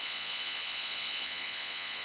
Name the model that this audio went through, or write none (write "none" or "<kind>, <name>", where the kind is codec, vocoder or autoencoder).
vocoder, Vocos